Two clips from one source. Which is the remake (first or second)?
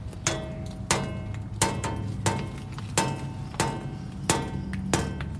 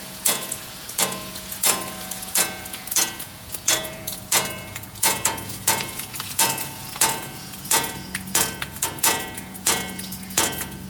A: second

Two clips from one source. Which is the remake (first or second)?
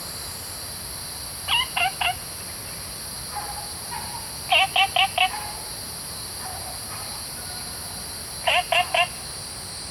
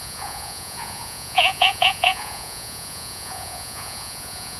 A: second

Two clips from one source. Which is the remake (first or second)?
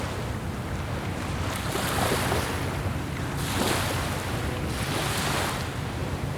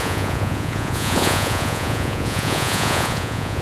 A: second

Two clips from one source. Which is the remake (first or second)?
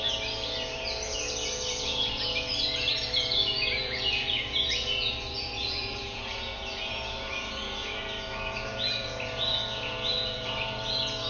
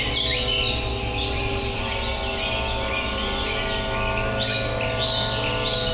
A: first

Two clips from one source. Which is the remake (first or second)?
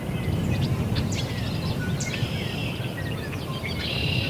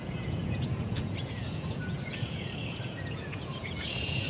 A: second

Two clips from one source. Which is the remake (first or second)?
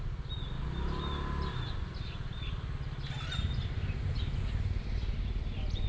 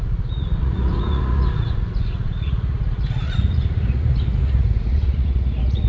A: second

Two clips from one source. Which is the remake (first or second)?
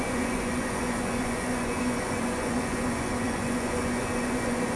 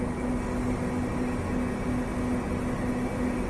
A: first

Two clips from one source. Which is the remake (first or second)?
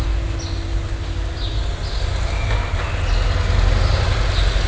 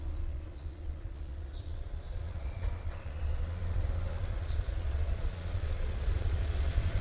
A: second